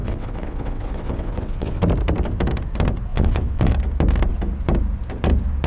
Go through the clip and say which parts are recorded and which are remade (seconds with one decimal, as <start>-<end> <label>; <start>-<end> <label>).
0.0-1.8 remade; 1.8-3.1 recorded; 3.1-3.7 remade; 3.7-5.7 recorded